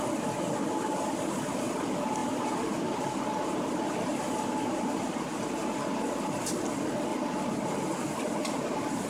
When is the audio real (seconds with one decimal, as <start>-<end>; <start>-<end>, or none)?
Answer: 0.0-2.2; 4.8-7.1